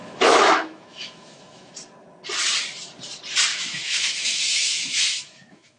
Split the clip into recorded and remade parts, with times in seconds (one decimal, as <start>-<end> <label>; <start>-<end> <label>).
0.0-1.7 remade; 1.7-3.5 recorded; 3.5-5.8 remade